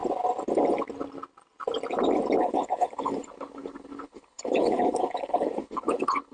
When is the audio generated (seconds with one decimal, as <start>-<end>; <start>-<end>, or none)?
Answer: 2.4-6.3